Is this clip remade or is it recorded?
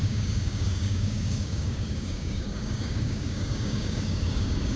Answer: remade